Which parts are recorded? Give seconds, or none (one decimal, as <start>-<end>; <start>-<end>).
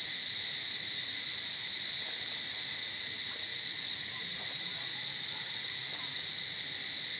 0.0-3.5; 6.4-7.2